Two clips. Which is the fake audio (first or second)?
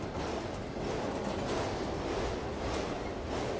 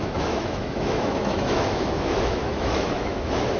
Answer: second